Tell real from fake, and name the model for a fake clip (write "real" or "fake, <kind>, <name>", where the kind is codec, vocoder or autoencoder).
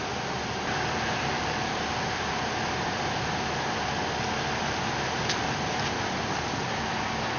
real